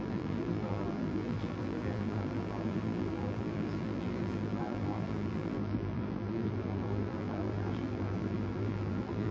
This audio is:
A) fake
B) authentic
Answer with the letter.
A